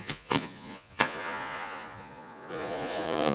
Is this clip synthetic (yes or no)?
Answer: yes